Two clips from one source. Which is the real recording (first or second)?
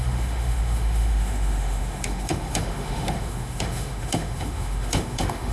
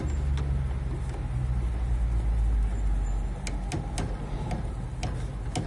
second